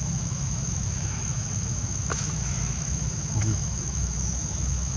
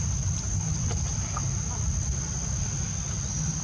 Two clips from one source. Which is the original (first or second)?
second